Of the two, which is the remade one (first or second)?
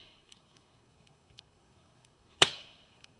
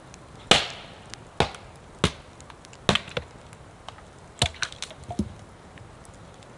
first